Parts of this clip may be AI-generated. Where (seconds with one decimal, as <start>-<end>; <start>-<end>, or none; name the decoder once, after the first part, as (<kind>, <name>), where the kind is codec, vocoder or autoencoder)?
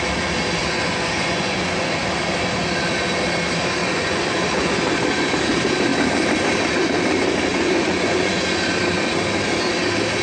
0.6-2.0 (vocoder, Vocos); 3.8-4.7; 7.5-8.5